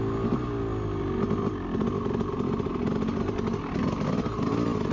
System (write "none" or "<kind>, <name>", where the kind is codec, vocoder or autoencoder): none